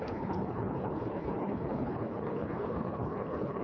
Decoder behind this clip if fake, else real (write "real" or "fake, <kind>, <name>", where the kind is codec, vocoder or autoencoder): fake, codec, HILCodec